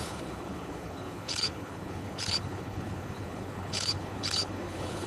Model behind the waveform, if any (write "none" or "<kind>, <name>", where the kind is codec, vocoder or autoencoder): codec, HILCodec